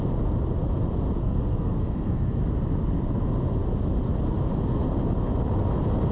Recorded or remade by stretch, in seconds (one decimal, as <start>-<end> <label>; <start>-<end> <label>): 0.0-1.2 recorded; 1.2-2.4 remade; 2.4-6.1 recorded